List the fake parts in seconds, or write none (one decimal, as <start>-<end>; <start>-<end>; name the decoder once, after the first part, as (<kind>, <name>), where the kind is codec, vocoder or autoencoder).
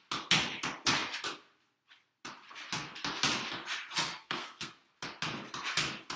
4.2-4.7 (codec, SNAC)